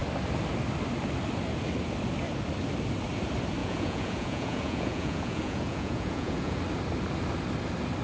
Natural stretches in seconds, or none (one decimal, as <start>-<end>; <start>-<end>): 0.0-3.6; 6.6-8.0